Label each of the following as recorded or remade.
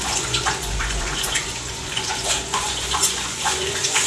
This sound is remade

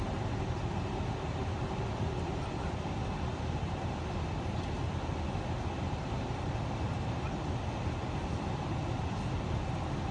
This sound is recorded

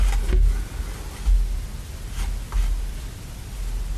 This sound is recorded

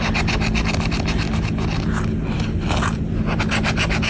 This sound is recorded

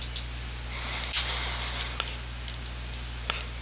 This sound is recorded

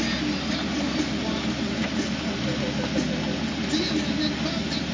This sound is recorded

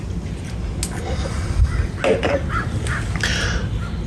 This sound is recorded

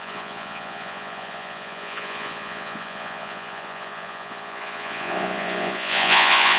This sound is remade